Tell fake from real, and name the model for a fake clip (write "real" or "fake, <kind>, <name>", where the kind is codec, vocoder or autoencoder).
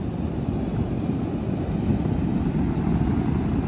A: real